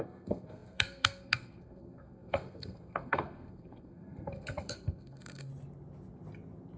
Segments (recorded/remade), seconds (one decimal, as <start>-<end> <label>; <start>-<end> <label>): 0.0-5.5 remade; 5.5-6.8 recorded